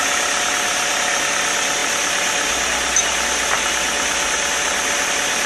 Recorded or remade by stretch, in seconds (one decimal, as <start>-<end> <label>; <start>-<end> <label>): 0.0-5.5 recorded